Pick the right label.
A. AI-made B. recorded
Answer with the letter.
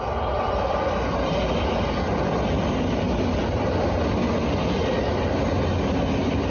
B